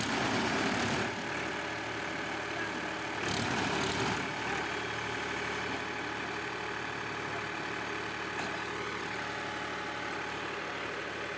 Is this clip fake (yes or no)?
no